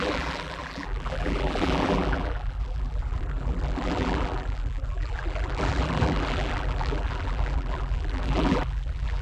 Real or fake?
fake